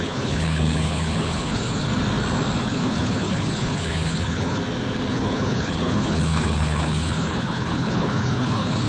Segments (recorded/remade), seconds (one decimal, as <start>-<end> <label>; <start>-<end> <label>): 0.0-1.9 remade; 1.9-2.6 recorded; 2.6-4.6 remade; 4.6-5.1 recorded; 5.1-8.9 remade